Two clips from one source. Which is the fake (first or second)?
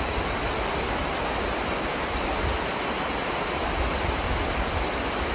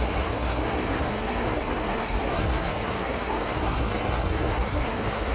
second